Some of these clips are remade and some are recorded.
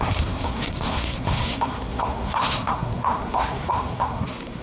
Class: remade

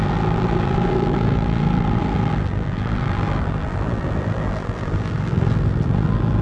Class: remade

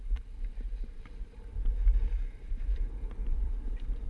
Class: remade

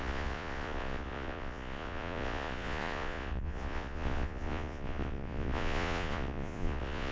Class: remade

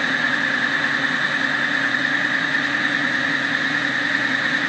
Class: remade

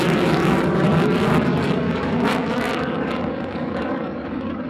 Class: remade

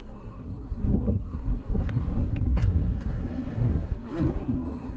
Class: remade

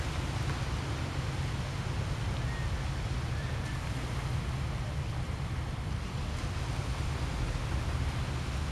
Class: recorded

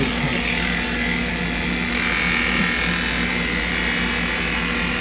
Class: recorded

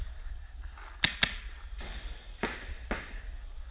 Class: recorded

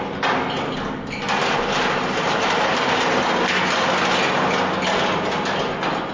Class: recorded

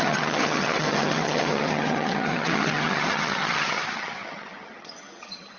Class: remade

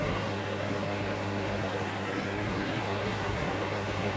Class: remade